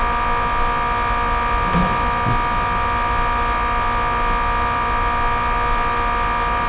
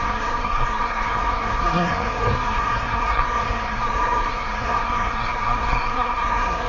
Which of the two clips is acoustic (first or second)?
first